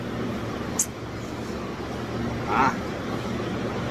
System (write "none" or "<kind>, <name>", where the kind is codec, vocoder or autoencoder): none